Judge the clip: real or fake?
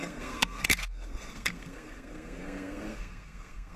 fake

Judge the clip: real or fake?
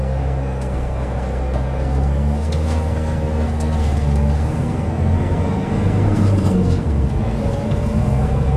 fake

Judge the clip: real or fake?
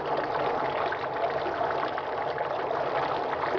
real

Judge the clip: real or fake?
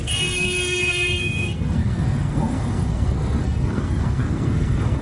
fake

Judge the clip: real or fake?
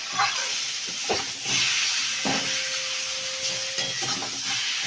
real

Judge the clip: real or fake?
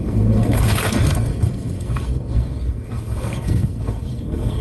fake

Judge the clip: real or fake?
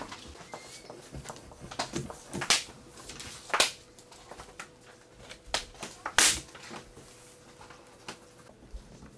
real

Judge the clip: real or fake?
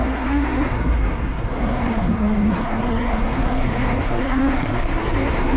fake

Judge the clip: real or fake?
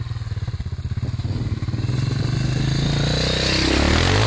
real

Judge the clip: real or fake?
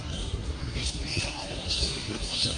fake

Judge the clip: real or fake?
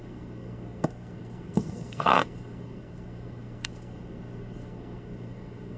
fake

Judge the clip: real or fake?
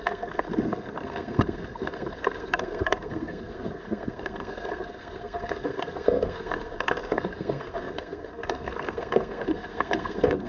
fake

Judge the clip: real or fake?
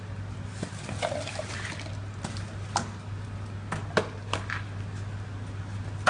real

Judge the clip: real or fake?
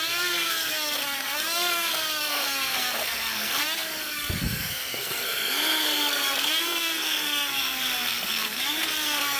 fake